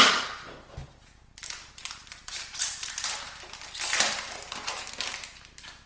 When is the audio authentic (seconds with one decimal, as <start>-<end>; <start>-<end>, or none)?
0.0-0.8; 2.9-5.9